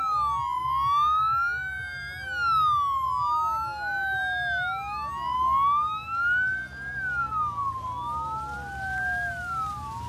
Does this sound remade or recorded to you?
recorded